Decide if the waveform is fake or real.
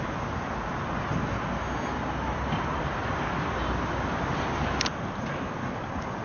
real